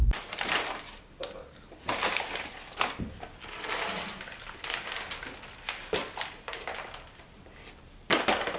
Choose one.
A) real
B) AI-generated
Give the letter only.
A